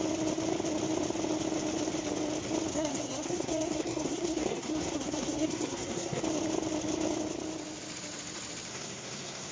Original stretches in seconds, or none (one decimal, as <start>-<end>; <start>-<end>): 0.0-2.7; 6.2-8.7